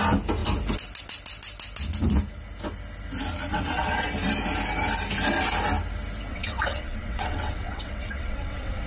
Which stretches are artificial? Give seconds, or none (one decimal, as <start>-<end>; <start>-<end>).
3.5-4.1; 6.3-8.9